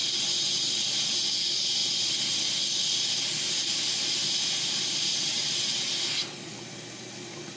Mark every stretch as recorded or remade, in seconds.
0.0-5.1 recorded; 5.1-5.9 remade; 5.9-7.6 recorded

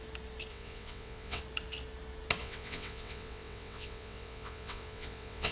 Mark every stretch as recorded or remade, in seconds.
0.0-0.5 recorded; 0.5-1.4 remade; 1.4-2.4 recorded; 2.4-5.5 remade